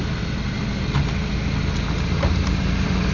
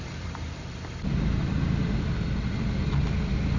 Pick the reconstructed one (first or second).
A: second